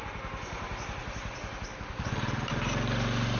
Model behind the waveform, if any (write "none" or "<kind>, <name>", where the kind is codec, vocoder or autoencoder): none